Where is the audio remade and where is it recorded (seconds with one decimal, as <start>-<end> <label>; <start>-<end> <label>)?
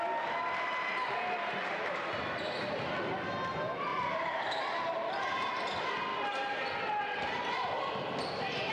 0.0-3.9 recorded; 3.9-5.5 remade; 5.5-8.7 recorded